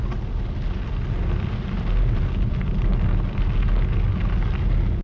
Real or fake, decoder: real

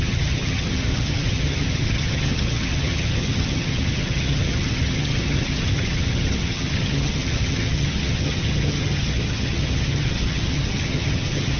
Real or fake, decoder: fake, vocoder, HiFi-GAN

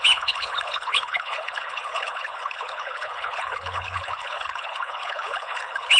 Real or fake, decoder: fake, codec, HILCodec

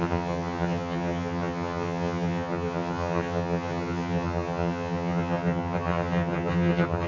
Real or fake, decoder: fake, vocoder, HiFi-GAN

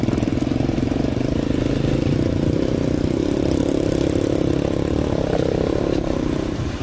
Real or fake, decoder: real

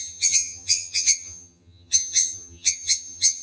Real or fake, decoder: fake, vocoder, HiFi-GAN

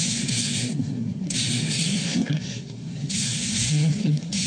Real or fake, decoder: fake, codec, SNAC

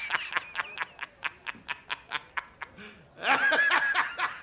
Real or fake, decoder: real